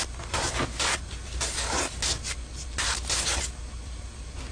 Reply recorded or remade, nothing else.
recorded